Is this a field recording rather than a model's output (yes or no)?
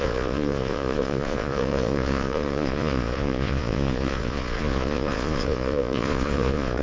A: no